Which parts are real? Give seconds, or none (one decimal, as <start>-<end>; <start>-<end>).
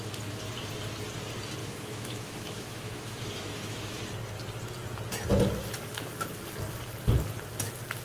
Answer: 0.0-1.6; 4.0-8.0